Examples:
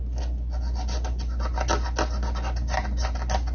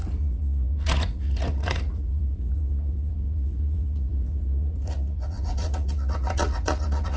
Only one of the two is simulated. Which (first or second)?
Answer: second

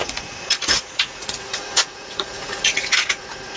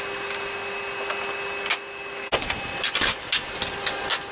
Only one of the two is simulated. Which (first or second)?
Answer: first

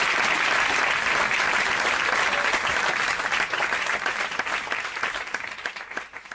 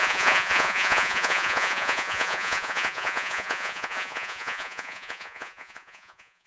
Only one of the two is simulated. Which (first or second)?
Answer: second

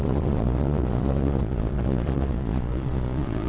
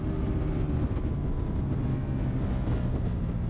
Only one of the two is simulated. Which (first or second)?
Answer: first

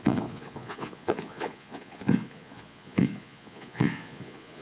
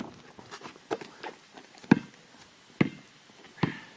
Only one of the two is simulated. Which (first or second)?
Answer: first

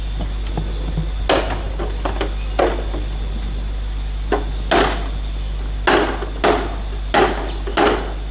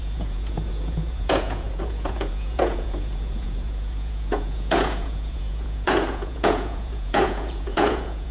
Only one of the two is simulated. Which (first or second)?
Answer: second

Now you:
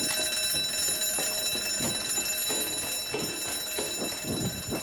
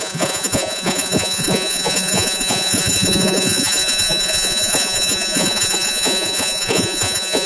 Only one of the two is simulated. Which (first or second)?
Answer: second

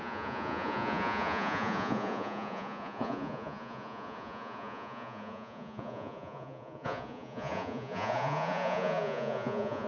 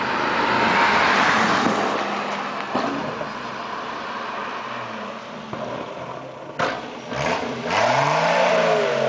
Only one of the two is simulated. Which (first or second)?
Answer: first